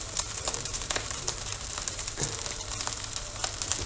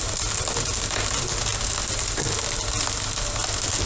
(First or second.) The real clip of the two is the second